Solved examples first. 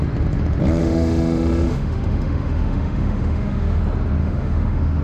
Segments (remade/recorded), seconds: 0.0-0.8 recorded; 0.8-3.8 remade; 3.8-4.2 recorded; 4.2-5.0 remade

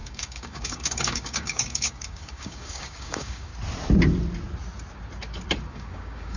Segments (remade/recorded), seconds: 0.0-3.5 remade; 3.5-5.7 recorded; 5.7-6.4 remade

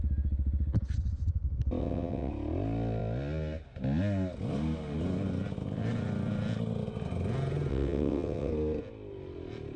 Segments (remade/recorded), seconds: 0.0-1.8 recorded; 1.8-2.3 remade; 2.3-7.7 recorded; 7.7-8.5 remade; 8.5-9.8 recorded

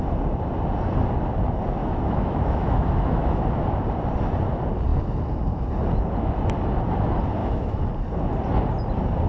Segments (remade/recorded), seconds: 0.0-1.8 recorded; 1.8-3.4 remade; 3.4-7.4 recorded; 7.4-7.9 remade; 7.9-9.3 recorded

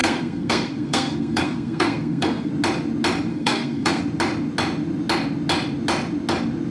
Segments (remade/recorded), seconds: 0.0-2.5 remade; 2.5-3.3 recorded; 3.3-4.0 remade; 4.0-6.7 recorded